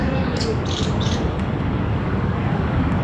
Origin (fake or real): fake